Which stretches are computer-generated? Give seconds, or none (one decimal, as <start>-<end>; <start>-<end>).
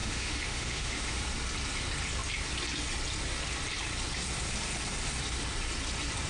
0.0-1.2